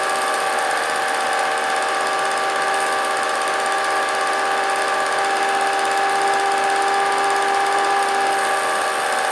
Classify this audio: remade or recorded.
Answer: recorded